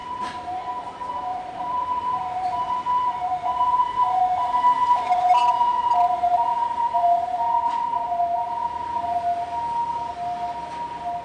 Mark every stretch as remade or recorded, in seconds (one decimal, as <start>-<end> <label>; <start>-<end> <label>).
0.0-0.6 remade; 0.6-1.3 recorded; 1.3-4.2 remade; 4.2-11.2 recorded